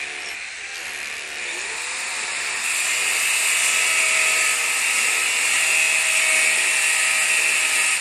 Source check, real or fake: real